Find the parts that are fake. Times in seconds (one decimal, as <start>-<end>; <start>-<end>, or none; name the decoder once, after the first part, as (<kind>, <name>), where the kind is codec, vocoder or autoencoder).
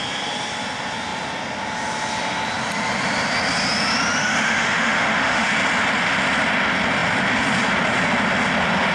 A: 4.2-5.5 (autoencoder, DAC-VAE)